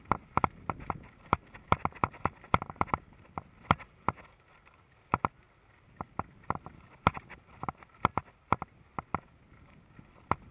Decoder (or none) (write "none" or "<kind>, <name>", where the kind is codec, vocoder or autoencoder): none